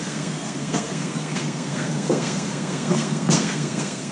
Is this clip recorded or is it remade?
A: remade